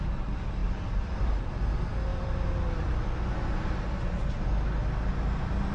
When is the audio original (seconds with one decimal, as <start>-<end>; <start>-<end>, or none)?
0.0-0.6; 1.6-5.7